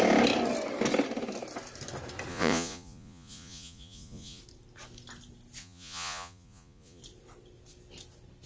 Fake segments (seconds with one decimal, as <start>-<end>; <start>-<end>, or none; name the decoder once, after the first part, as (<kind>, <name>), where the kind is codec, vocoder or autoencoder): 2.3-4.4 (vocoder, Vocos); 5.6-7.0